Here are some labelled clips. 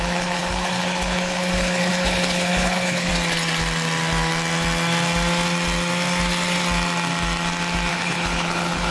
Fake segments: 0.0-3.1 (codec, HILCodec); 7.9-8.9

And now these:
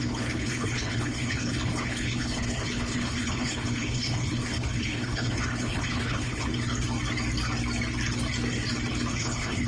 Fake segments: 0.0-6.5 (codec, HILCodec); 9.1-9.7

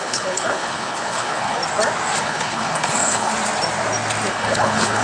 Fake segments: 0.0-1.6 (codec, HILCodec); 2.2-3.3; 4.3-5.0

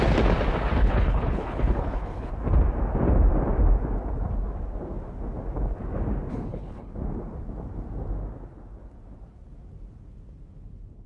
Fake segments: 0.8-2.3 (codec, HILCodec); 6.3-6.9

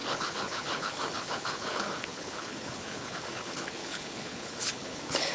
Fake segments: 0.0-5.3 (codec, HILCodec)

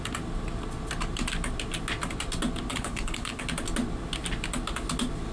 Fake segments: 2.7-3.4 (codec, HILCodec)

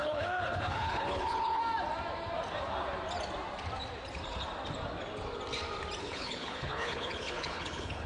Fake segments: 0.0-1.6 (codec, HILCodec); 6.0-8.1